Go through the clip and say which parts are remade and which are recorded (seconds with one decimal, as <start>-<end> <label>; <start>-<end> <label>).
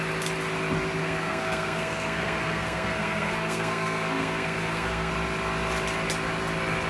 0.0-1.0 recorded; 1.0-5.1 remade; 5.1-6.9 recorded